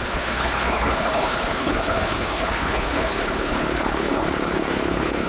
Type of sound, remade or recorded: remade